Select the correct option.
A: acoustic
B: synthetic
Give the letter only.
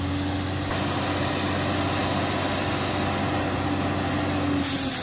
A